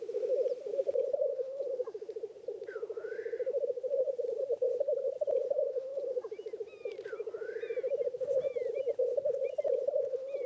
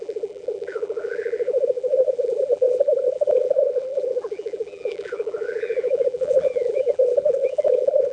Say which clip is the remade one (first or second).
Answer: second